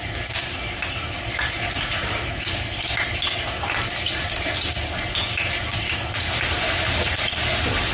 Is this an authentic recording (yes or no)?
yes